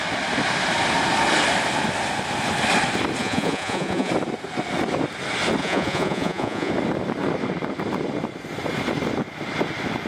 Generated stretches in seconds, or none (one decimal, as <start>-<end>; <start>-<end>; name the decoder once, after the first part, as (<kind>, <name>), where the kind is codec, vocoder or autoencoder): 3.2-4.1 (vocoder, Vocos); 5.6-6.7